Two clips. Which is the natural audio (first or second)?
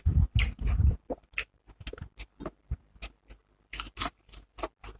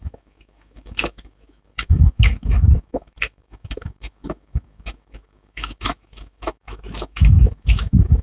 first